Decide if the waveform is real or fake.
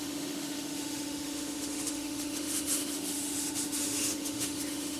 fake